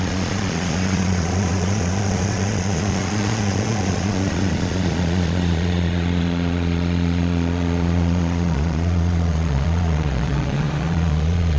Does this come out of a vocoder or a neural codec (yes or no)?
yes